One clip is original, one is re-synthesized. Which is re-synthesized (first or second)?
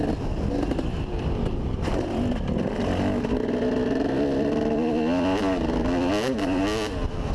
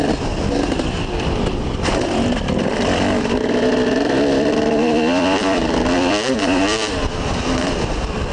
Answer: second